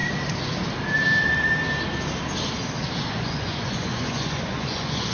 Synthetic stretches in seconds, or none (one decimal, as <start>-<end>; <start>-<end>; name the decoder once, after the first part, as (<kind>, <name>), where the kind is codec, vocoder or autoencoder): 3.1-5.1 (vocoder, Vocos)